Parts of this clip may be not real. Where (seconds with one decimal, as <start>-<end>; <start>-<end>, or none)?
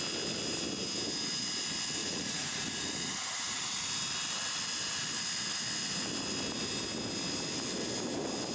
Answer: 2.0-3.9